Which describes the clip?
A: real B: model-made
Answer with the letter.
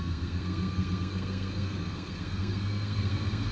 B